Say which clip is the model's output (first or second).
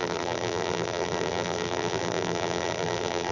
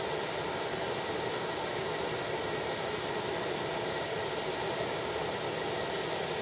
first